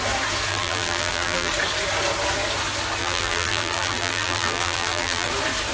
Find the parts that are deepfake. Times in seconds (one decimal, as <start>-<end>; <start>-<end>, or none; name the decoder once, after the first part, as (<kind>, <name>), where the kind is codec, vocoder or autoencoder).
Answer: 0.5-1.5 (vocoder, BigVGAN v2); 3.0-5.3